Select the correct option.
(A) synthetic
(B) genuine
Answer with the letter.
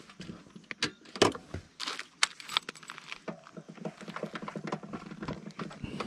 B